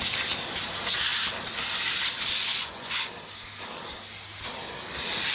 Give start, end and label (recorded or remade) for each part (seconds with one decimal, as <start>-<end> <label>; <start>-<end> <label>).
0.0-2.5 recorded; 2.5-3.1 remade; 3.1-5.3 recorded

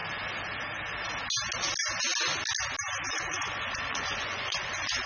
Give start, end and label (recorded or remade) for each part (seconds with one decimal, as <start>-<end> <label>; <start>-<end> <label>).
0.0-3.1 recorded; 3.1-5.1 remade

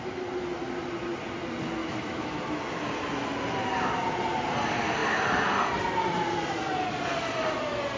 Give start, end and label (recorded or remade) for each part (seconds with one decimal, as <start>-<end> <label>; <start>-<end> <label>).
0.0-1.8 recorded; 1.8-2.4 remade; 2.4-8.0 recorded

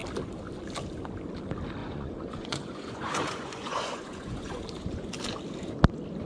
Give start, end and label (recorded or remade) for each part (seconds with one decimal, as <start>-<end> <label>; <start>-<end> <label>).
0.0-1.8 recorded; 1.8-4.6 remade; 4.6-6.3 recorded

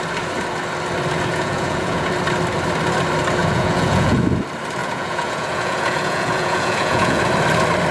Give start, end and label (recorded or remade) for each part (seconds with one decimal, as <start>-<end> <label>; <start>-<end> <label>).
0.0-1.3 recorded; 1.3-2.1 remade; 2.1-3.4 recorded; 3.4-4.2 remade; 4.2-4.8 recorded; 4.8-7.2 remade; 7.2-7.9 recorded

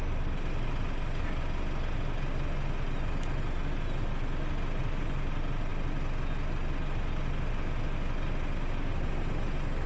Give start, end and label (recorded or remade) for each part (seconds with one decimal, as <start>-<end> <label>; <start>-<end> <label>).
0.0-9.9 recorded

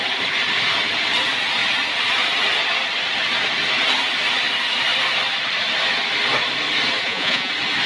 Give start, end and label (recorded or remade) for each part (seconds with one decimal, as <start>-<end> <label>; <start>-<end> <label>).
0.0-7.0 recorded; 7.0-7.5 remade; 7.5-7.9 recorded